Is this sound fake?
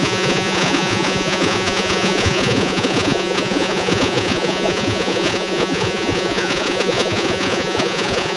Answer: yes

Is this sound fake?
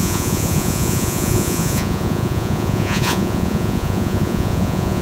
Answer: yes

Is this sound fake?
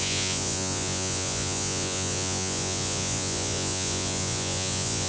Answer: yes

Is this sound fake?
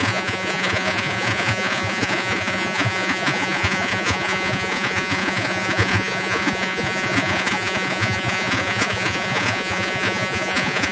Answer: yes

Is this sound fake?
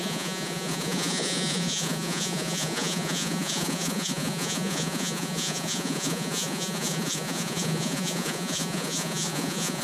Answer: yes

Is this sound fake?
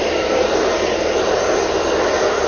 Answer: no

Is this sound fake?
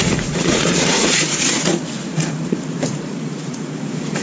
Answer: yes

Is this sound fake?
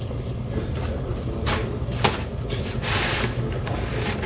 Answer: no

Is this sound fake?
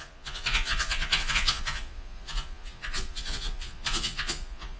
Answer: yes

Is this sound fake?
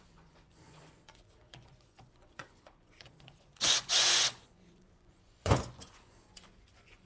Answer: yes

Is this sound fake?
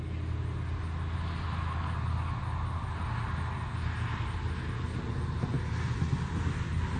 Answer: no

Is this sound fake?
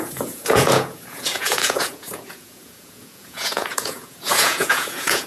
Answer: yes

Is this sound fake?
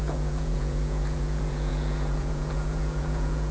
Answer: yes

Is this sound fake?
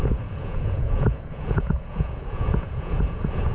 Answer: yes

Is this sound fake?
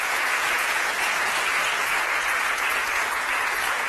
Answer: yes